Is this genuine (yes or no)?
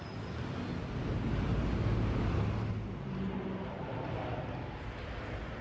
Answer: yes